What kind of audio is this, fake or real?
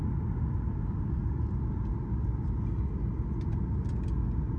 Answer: real